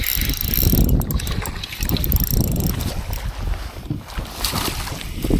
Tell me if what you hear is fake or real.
real